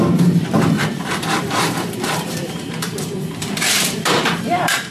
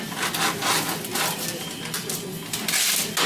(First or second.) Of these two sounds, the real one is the second